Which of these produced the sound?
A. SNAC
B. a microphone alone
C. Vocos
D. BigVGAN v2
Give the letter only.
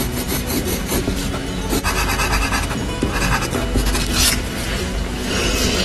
B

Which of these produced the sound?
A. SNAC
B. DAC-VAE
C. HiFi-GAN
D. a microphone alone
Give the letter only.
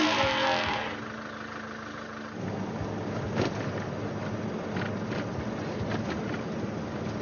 D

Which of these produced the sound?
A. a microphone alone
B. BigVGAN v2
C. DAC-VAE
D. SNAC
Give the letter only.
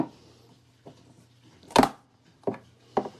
A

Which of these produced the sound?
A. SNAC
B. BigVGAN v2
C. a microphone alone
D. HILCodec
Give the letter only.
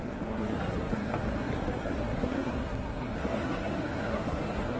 A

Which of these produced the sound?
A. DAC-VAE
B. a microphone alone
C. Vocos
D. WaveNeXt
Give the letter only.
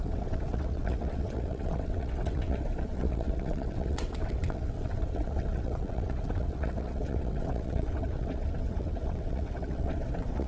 D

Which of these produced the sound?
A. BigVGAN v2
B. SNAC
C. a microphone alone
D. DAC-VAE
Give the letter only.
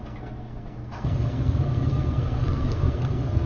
B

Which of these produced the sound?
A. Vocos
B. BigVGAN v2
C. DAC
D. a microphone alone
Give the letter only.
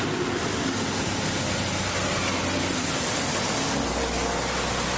D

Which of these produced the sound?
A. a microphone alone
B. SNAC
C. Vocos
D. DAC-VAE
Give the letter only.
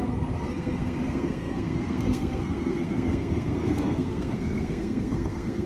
B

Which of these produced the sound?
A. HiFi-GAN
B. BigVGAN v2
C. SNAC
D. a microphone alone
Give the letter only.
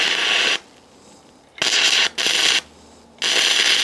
D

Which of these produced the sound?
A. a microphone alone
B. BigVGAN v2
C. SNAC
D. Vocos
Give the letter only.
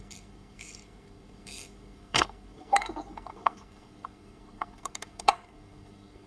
C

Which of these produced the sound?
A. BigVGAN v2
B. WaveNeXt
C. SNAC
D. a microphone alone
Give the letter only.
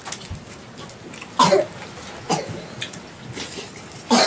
D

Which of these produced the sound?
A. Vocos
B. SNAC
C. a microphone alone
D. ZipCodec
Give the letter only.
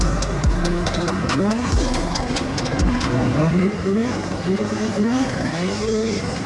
B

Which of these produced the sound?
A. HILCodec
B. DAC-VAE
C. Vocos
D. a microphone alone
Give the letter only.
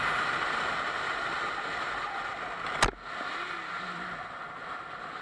D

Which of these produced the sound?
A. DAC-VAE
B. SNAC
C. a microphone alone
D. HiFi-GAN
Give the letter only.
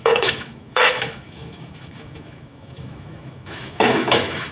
A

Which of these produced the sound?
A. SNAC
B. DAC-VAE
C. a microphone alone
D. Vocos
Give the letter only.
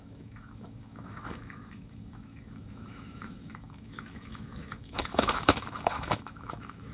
B